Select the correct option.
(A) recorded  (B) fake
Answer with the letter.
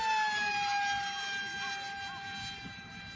A